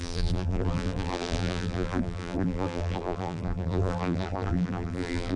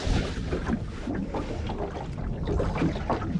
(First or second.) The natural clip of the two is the second